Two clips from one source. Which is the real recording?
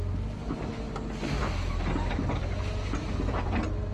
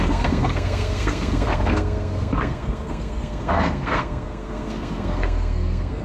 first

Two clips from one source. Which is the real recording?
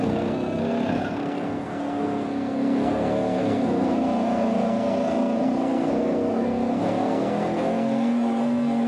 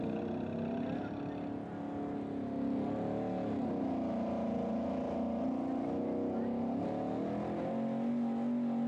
second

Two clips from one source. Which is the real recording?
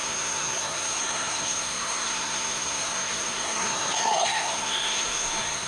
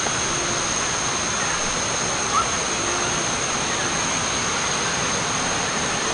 second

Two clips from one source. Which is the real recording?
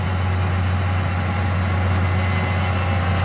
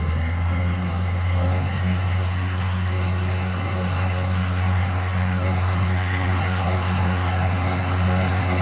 first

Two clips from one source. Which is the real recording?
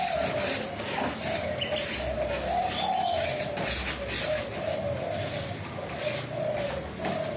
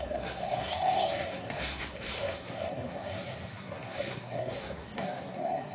first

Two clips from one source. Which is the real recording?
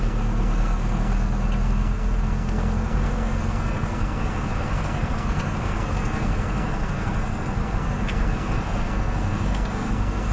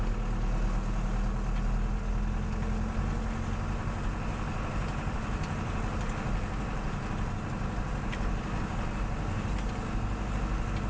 second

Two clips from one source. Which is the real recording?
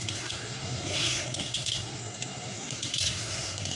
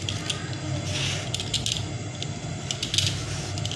second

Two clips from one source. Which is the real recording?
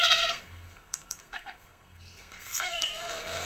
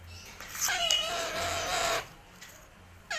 second